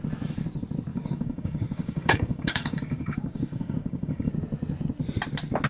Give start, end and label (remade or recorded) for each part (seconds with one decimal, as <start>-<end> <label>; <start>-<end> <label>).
0.0-0.9 recorded; 0.9-4.3 remade; 4.3-5.7 recorded